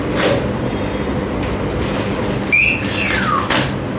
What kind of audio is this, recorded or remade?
recorded